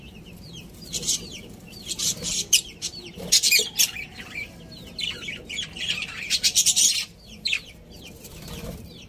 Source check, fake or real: fake